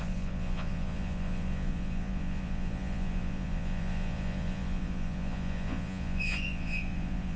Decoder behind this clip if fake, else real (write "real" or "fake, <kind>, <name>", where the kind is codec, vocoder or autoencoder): fake, vocoder, Vocos